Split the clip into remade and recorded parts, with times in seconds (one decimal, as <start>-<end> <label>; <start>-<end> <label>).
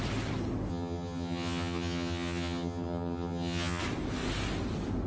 0.0-0.7 recorded; 0.7-3.8 remade; 3.8-5.1 recorded